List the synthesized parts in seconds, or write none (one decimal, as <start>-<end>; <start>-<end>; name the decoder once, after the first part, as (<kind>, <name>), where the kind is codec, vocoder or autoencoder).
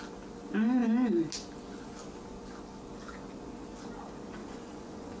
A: 4.4-5.2 (vocoder, Vocos)